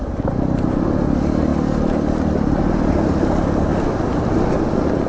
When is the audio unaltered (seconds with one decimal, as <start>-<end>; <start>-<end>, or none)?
0.0-5.1